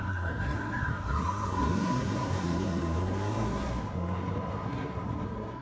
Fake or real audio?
fake